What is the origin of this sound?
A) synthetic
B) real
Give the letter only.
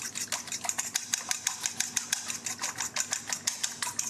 B